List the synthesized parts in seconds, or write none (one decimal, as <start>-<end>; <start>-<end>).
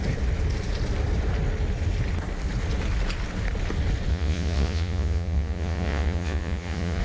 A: 4.1-7.0